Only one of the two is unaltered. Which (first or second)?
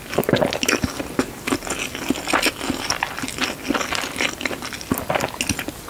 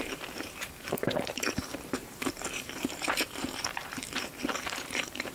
first